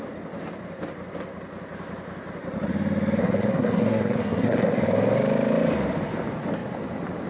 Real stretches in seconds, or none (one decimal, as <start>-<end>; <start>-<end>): 0.0-3.2; 4.8-7.3